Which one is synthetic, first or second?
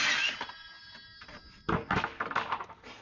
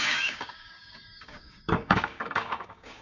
second